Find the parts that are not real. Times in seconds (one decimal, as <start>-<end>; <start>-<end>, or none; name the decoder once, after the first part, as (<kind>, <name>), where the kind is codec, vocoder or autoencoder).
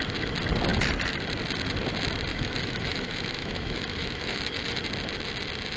2.3-4.8 (autoencoder, DAC-VAE)